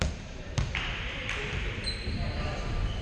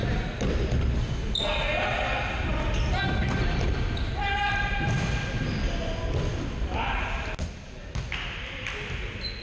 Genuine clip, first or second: second